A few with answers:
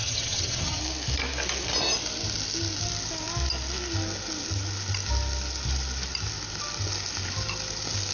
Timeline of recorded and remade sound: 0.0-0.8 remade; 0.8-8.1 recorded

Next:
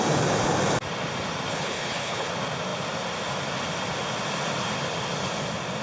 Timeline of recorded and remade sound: 0.0-1.5 recorded; 1.5-2.3 remade; 2.3-5.8 recorded

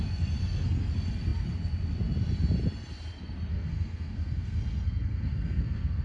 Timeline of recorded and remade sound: 0.0-0.4 recorded; 0.4-0.9 remade; 0.9-3.5 recorded; 3.5-6.0 remade

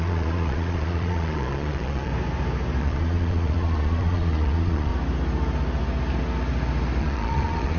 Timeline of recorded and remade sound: 0.0-2.1 remade; 2.1-2.8 recorded; 2.8-4.9 remade; 4.9-7.0 recorded; 7.0-7.8 remade